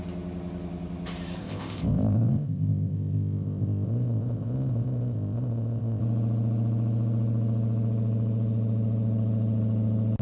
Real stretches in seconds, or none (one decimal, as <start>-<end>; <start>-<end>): 0.0-1.4; 6.0-10.2